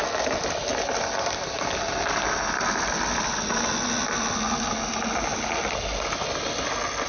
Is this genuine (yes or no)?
yes